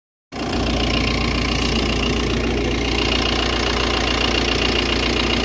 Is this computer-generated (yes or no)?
no